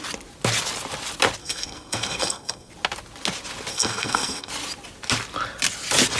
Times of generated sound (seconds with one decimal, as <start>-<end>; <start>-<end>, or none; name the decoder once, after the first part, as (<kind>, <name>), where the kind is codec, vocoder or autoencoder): 1.4-2.7 (codec, SNAC); 3.7-4.5